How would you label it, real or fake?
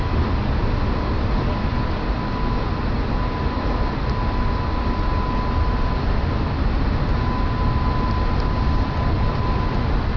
real